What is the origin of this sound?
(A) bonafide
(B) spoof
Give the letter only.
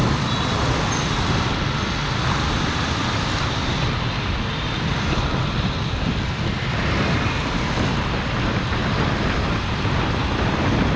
A